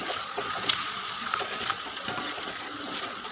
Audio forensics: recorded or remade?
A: remade